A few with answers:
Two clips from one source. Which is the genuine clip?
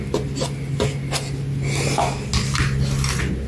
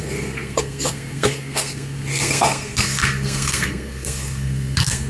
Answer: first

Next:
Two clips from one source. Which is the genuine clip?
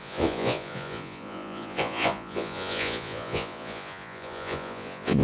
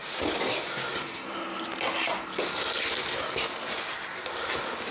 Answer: second